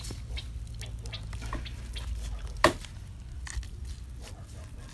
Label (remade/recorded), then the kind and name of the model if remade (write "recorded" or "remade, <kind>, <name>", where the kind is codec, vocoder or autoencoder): recorded